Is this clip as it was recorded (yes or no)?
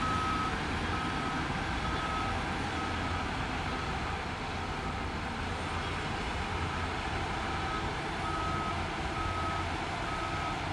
yes